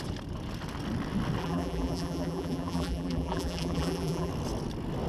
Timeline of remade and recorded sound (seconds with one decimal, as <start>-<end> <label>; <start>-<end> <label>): 0.0-1.4 recorded; 1.4-4.3 remade; 4.3-5.1 recorded